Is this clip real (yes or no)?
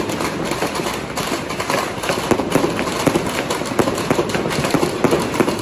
yes